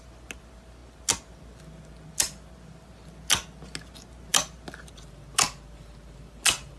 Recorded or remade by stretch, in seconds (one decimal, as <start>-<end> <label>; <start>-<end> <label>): 0.0-6.8 recorded